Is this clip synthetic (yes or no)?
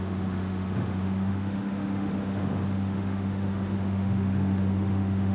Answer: yes